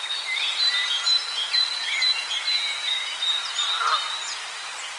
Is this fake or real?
real